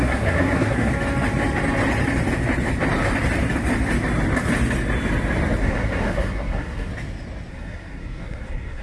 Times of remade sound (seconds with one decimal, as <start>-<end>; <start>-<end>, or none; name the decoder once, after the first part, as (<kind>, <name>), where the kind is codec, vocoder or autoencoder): 0.0-0.9 (codec, SNAC); 5.6-6.9; 7.5-8.8